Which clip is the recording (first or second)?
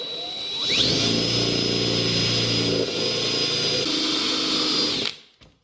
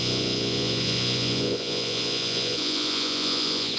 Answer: first